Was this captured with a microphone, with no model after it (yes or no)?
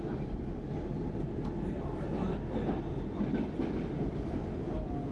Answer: yes